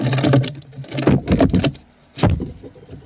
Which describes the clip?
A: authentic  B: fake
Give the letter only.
A